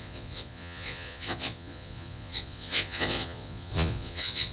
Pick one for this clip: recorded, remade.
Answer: remade